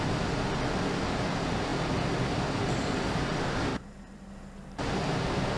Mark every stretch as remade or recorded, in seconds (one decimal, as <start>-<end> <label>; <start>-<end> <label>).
0.0-3.7 recorded; 3.7-4.3 remade; 4.3-5.6 recorded